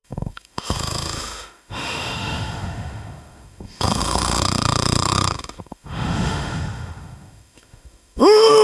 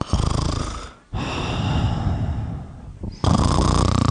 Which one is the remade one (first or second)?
first